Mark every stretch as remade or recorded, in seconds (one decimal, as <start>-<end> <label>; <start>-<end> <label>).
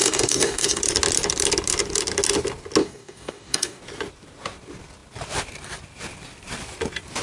0.0-0.8 remade; 0.8-2.8 recorded; 2.8-3.8 remade; 3.8-7.2 recorded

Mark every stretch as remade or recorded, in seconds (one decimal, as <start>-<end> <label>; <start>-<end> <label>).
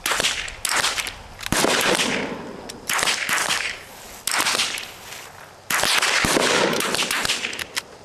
0.0-3.4 recorded; 3.4-3.9 remade; 3.9-8.0 recorded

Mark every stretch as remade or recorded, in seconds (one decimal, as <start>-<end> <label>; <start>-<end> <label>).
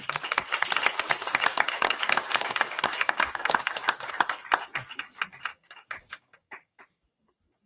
0.0-1.5 recorded; 1.5-4.1 remade; 4.1-5.5 recorded; 5.5-7.0 remade; 7.0-7.7 recorded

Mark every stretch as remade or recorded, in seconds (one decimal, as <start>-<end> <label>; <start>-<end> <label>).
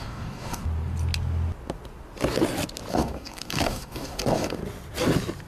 0.0-0.6 remade; 0.6-2.9 recorded; 2.9-4.6 remade; 4.6-5.5 recorded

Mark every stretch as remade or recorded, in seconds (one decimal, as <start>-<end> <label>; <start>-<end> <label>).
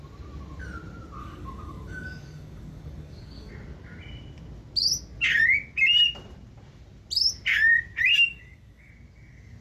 0.0-1.2 recorded; 1.2-3.5 remade; 3.5-8.1 recorded; 8.1-8.9 remade; 8.9-9.6 recorded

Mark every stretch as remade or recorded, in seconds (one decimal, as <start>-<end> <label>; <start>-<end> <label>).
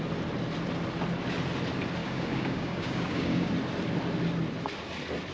0.0-2.0 recorded; 2.0-3.5 remade; 3.5-5.3 recorded